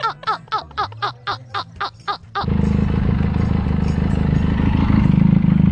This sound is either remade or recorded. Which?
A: recorded